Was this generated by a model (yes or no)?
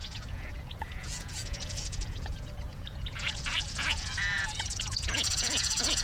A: yes